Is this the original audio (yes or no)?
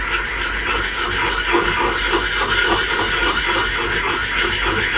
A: yes